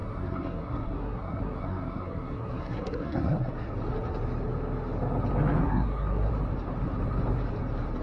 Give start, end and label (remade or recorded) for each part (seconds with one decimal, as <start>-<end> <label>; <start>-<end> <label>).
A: 0.0-3.5 remade; 3.5-5.6 recorded; 5.6-6.3 remade; 6.3-8.0 recorded

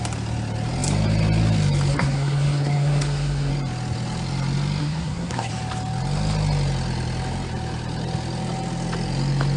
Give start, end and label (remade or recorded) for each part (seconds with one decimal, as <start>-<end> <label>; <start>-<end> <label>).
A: 0.0-1.9 recorded; 1.9-3.5 remade; 3.5-4.8 recorded; 4.8-5.5 remade; 5.5-9.6 recorded

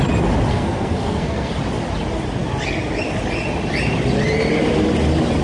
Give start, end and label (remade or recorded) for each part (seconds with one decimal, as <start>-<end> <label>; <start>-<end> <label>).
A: 0.0-0.5 recorded; 0.5-1.5 remade; 1.5-5.4 recorded

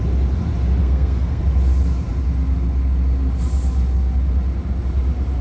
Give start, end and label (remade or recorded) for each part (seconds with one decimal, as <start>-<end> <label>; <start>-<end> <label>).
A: 0.0-0.8 recorded; 0.8-1.4 remade; 1.4-5.4 recorded

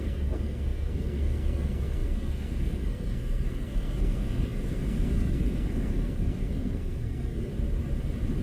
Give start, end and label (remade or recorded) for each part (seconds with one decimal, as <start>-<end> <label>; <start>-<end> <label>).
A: 0.0-7.5 remade; 7.5-8.4 recorded

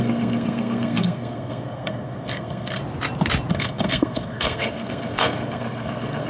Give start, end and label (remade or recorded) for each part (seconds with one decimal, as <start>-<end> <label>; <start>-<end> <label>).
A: 0.0-2.8 remade; 2.8-3.5 recorded; 3.5-6.3 remade